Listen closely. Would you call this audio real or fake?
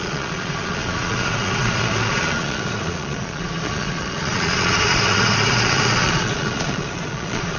fake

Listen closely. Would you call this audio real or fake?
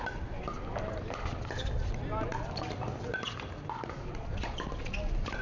real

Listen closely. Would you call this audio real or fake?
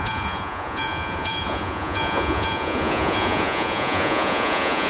fake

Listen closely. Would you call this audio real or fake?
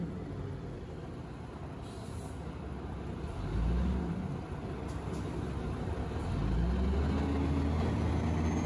real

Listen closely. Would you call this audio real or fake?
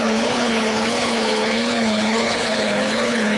fake